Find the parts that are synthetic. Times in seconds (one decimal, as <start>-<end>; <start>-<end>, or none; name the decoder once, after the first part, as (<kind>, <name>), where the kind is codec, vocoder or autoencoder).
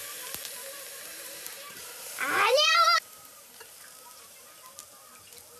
1.1-4.5 (vocoder, BigVGAN v2)